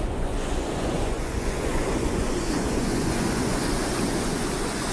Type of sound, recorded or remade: remade